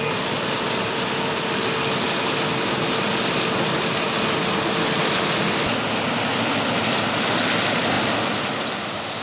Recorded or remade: recorded